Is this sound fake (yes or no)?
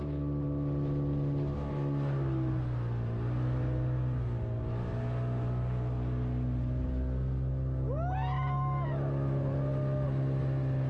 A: no